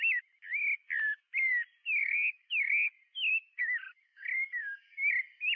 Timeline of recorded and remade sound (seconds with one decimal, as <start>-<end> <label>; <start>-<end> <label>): 0.0-2.0 recorded; 2.0-2.7 remade; 2.7-3.3 recorded; 3.3-5.1 remade; 5.1-5.6 recorded